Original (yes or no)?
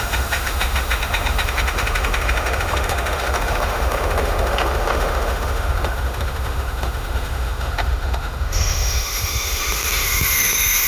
no